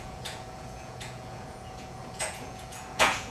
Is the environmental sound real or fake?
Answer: fake